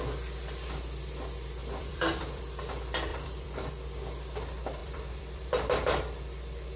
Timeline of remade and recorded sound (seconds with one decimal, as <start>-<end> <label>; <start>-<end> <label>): 0.0-1.6 recorded; 1.6-2.4 remade; 2.4-3.1 recorded; 3.1-3.7 remade; 3.7-4.8 recorded; 4.8-5.5 remade; 5.5-6.8 recorded